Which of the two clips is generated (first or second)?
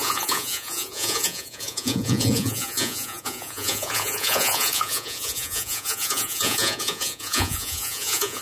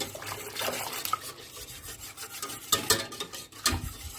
first